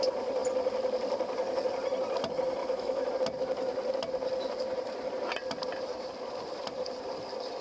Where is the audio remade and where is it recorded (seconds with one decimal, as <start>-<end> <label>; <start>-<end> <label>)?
0.0-2.6 recorded; 2.6-3.1 remade; 3.1-7.6 recorded